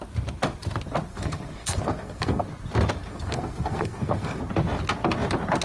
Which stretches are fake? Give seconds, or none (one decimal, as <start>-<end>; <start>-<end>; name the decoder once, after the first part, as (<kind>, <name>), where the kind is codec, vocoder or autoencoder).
1.1-2.4 (codec, SNAC); 3.1-4.4

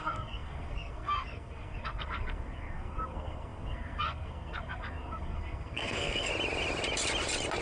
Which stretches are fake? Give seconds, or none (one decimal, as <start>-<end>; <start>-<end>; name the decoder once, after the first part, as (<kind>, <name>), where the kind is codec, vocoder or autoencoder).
0.0-6.3 (codec, SNAC)

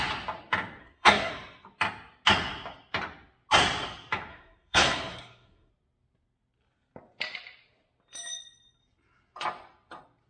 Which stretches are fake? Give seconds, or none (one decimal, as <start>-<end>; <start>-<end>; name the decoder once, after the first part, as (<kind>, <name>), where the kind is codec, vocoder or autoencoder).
0.8-1.3 (codec, SNAC); 4.3-5.7

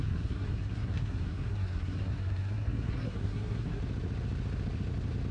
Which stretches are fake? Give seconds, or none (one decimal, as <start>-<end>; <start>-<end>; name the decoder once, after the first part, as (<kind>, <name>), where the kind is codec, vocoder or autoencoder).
0.0-3.8 (codec, SNAC)

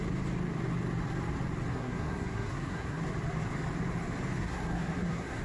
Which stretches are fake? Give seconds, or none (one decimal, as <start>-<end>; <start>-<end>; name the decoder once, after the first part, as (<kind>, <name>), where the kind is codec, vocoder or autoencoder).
1.7-3.0 (codec, SNAC); 4.4-5.4